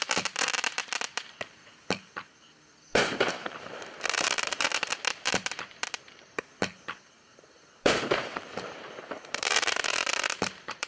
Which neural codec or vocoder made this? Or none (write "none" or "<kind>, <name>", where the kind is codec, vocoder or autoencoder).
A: vocoder, BigVGAN v2